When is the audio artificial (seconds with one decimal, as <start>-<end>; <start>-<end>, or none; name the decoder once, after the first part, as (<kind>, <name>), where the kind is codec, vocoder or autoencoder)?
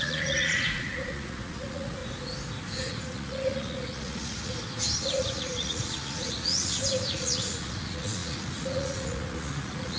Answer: 0.0-2.0 (vocoder, Vocos); 2.8-4.5; 5.0-10.0